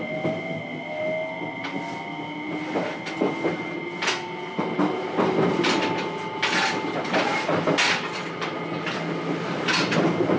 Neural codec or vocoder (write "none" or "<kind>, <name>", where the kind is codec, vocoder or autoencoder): none